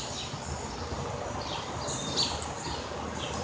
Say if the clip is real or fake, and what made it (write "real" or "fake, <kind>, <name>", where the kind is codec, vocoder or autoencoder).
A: real